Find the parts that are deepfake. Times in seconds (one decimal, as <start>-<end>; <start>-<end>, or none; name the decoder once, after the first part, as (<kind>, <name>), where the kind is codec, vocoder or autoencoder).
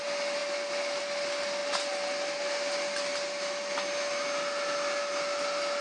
none